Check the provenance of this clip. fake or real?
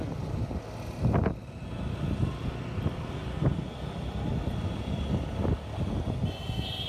real